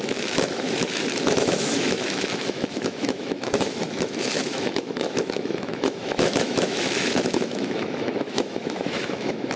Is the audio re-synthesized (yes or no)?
yes